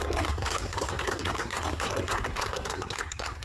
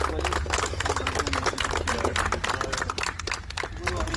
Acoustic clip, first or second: second